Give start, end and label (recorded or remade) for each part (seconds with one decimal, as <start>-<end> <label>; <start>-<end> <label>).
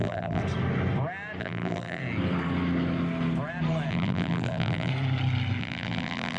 0.0-0.4 remade; 0.4-1.4 recorded; 1.4-2.0 remade; 2.0-3.9 recorded; 3.9-4.9 remade; 4.9-5.6 recorded; 5.6-6.4 remade